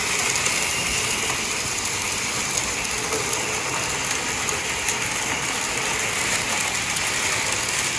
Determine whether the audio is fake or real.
real